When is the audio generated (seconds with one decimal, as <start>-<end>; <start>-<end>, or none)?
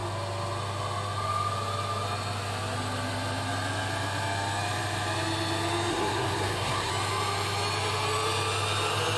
5.9-6.9